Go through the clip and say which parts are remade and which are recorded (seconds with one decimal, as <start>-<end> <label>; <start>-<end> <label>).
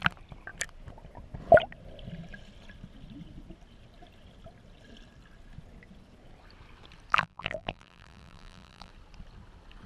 0.0-7.1 recorded; 7.1-8.9 remade; 8.9-9.9 recorded